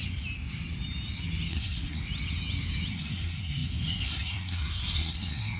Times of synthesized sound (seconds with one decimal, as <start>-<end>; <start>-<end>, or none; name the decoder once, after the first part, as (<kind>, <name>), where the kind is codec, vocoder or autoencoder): 1.5-2.0 (codec, SNAC); 2.9-5.6